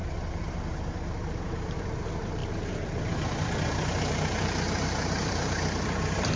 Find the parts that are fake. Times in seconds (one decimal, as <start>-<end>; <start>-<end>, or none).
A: 0.0-6.4